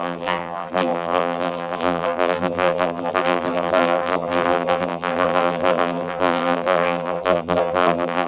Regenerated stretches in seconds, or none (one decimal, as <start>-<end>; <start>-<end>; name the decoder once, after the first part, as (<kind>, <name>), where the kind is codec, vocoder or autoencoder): 0.0-8.3 (vocoder, BigVGAN v2)